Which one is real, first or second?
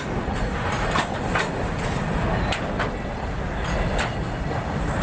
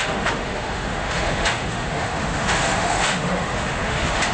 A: first